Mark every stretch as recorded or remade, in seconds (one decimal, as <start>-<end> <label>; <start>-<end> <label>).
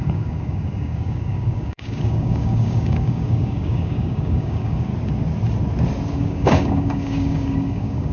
0.0-4.9 remade; 4.9-6.1 recorded; 6.1-8.1 remade